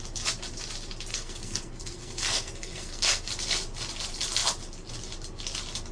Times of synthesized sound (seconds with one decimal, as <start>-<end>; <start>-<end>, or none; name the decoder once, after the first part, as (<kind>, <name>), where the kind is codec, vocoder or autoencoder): 1.1-3.3 (codec, SNAC)